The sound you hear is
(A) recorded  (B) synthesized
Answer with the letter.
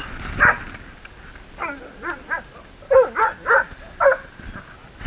A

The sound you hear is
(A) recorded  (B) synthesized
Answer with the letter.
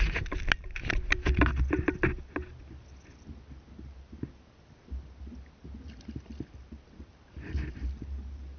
A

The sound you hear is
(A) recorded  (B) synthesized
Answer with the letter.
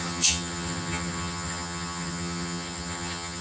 B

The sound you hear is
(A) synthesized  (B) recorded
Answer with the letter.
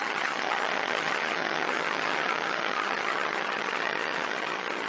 A